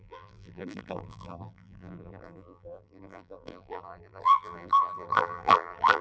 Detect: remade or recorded remade